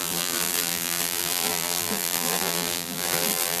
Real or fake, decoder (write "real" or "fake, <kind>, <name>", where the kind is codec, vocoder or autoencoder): fake, vocoder, BigVGAN v2